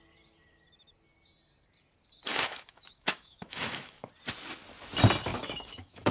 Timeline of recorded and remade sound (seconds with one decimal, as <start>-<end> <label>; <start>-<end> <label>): 0.0-2.3 recorded; 2.3-4.1 remade; 4.1-5.3 recorded; 5.3-6.1 remade